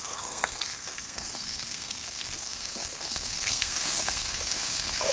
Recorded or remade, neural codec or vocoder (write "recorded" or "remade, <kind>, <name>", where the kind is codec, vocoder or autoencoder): remade, codec, SNAC